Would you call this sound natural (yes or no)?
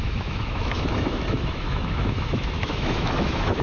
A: no